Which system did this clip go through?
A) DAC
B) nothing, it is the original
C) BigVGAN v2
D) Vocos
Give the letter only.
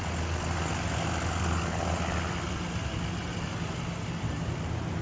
B